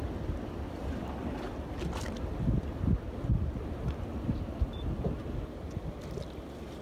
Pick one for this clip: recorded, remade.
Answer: recorded